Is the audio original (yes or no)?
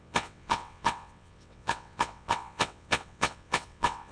no